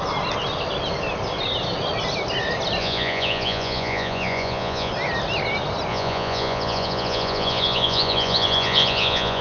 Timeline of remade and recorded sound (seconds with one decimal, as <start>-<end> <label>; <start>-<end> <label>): 0.0-2.8 recorded; 2.8-4.9 remade; 4.9-5.9 recorded; 5.9-9.4 remade